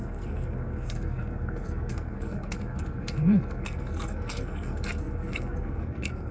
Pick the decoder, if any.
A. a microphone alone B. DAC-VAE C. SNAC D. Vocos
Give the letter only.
C